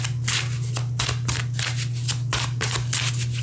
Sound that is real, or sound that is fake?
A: real